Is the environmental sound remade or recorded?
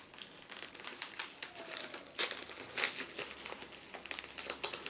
recorded